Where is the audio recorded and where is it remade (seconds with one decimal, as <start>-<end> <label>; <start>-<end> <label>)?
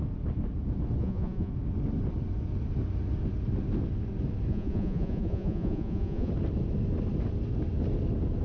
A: 0.0-1.0 recorded; 1.0-1.5 remade; 1.5-4.5 recorded; 4.5-6.3 remade; 6.3-8.4 recorded